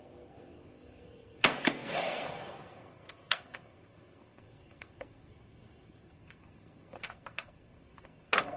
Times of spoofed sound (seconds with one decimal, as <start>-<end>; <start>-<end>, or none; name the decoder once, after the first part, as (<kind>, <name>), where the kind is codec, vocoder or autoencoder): 0.0-8.6 (codec, SNAC)